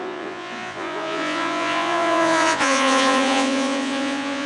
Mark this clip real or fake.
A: fake